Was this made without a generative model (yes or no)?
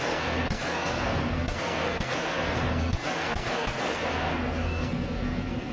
no